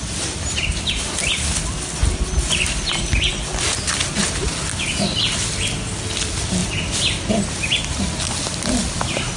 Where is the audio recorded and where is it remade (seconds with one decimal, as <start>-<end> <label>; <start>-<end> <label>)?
0.0-2.0 recorded; 2.0-2.9 remade; 2.9-9.4 recorded